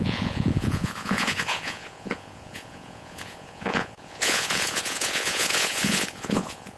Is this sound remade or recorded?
remade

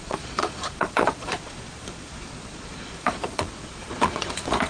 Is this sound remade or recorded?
remade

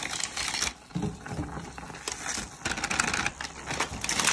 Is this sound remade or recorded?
recorded